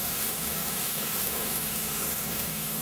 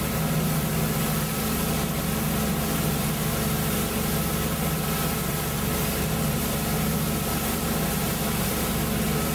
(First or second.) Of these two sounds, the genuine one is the second